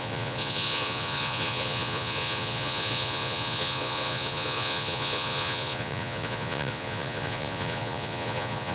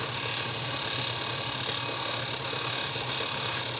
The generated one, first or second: first